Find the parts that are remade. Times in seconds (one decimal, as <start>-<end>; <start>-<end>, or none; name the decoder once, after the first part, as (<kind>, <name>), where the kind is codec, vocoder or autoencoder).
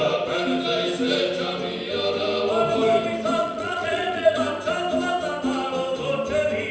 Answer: 3.4-4.4 (vocoder, Vocos)